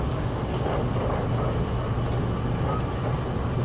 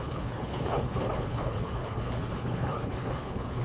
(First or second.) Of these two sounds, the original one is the first